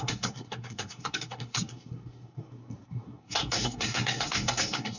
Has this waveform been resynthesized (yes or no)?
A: yes